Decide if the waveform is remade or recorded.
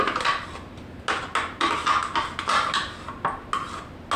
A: recorded